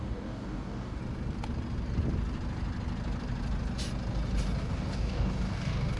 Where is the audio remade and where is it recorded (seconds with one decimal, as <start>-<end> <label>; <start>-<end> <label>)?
0.0-1.0 remade; 1.0-4.6 recorded; 4.6-6.0 remade